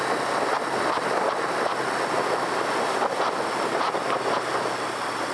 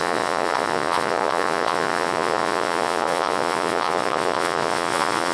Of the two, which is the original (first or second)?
first